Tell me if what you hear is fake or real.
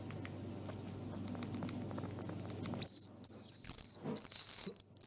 real